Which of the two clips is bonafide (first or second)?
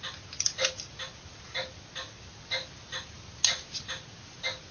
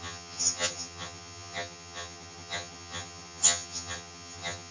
first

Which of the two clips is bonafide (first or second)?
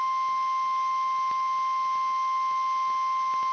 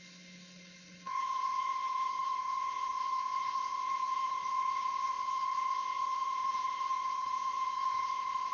first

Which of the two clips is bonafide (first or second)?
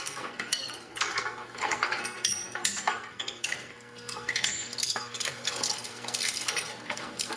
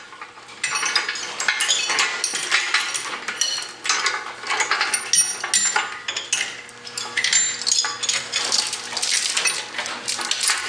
second